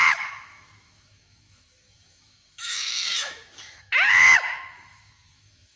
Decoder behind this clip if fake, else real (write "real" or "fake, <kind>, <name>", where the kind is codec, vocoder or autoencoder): fake, autoencoder, DAC-VAE